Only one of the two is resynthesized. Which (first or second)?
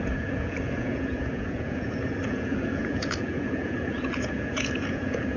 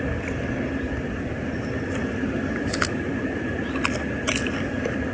first